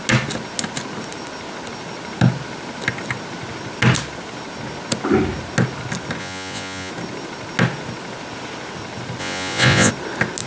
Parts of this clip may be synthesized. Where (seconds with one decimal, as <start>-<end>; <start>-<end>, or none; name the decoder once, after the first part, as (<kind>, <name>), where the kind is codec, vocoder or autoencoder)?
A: 6.2-6.9 (vocoder, Vocos); 9.2-9.9